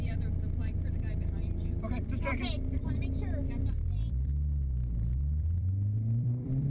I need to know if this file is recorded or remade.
remade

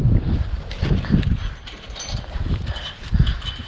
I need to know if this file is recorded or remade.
remade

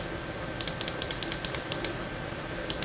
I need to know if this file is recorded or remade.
recorded